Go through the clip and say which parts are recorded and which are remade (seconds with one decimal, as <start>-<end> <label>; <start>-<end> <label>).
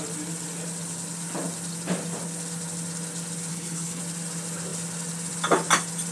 0.0-3.5 recorded; 3.5-4.0 remade; 4.0-6.1 recorded